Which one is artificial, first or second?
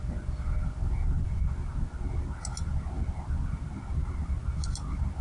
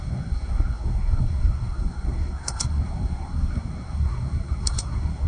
second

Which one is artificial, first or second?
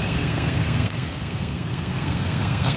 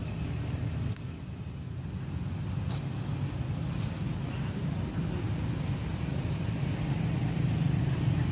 first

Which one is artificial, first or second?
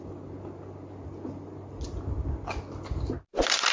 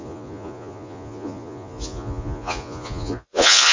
second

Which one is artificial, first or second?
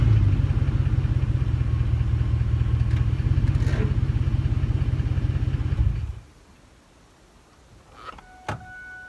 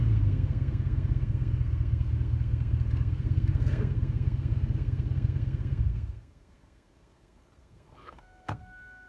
second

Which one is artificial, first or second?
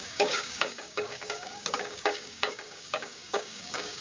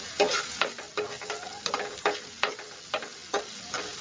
first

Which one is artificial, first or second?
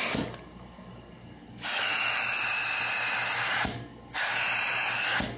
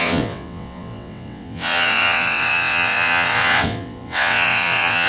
second